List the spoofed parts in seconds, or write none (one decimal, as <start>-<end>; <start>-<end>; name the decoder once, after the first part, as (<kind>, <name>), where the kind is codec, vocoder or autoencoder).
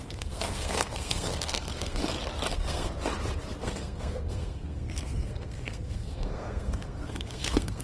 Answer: 0.0-2.0 (codec, SNAC); 2.5-3.0; 3.6-7.8